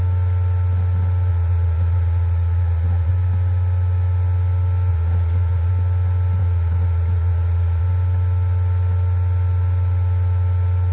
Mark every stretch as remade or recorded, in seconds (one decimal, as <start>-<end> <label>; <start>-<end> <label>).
0.0-1.3 recorded; 1.3-3.1 remade; 3.1-4.9 recorded; 4.9-5.7 remade; 5.7-6.4 recorded; 6.4-7.8 remade; 7.8-10.9 recorded